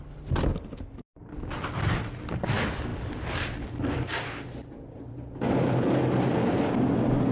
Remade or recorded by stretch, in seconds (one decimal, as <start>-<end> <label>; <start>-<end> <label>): 0.0-2.9 recorded; 2.9-6.7 remade; 6.7-7.3 recorded